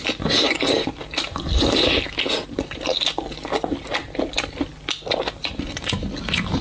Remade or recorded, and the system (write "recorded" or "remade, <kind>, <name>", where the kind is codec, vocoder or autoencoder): recorded